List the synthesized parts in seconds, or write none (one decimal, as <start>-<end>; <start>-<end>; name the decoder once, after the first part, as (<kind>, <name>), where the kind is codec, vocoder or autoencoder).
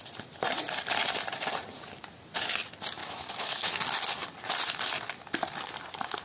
3.0-3.7 (autoencoder, DAC-VAE)